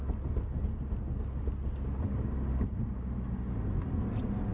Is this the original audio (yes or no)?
yes